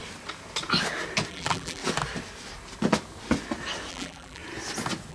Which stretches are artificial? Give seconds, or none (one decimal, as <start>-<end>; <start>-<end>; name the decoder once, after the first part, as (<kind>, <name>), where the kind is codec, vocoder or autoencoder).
1.3-1.8 (vocoder, BigVGAN v2); 3.9-4.4

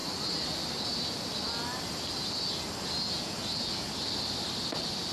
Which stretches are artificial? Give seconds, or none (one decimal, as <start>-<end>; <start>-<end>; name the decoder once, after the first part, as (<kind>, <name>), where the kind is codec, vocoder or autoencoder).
none

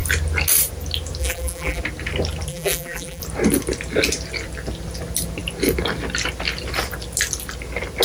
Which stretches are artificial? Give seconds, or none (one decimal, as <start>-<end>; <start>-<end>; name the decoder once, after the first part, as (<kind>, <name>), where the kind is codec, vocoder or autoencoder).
1.2-1.8 (vocoder, BigVGAN v2); 2.5-3.2

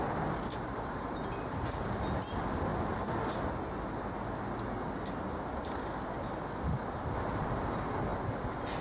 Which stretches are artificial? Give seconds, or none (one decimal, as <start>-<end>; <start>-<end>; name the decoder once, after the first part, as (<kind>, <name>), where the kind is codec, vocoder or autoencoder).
0.0-1.5 (vocoder, BigVGAN v2)

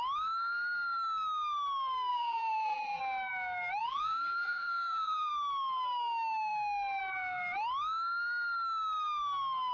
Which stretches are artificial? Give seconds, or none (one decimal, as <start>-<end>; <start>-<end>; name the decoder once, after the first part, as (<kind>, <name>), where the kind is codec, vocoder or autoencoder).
2.1-3.0 (vocoder, BigVGAN v2); 3.8-5.3